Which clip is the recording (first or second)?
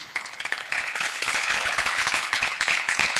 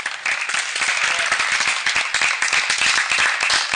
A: second